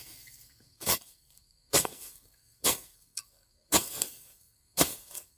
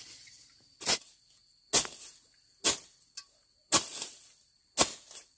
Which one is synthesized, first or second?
first